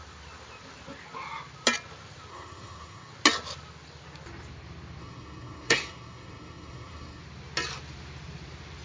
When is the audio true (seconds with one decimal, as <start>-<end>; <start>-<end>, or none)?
0.0-2.3; 3.1-5.0; 7.2-8.8